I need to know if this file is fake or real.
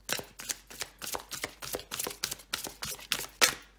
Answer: real